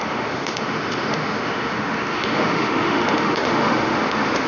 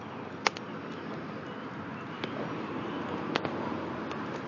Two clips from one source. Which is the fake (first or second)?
first